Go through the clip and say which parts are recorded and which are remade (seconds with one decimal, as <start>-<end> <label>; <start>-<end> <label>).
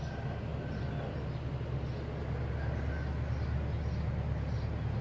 0.0-5.0 recorded